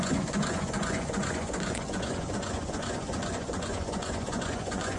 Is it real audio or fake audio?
fake